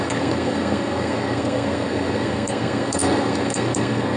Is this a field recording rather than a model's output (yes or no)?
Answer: no